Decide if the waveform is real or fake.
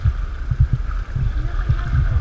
real